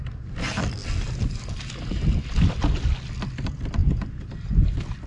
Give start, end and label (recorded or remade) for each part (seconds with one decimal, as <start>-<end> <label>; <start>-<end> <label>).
0.0-0.8 remade; 0.8-2.2 recorded; 2.2-3.8 remade; 3.8-4.5 recorded; 4.5-5.1 remade